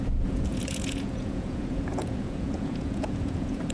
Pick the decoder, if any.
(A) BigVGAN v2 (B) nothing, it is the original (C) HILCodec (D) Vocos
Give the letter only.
D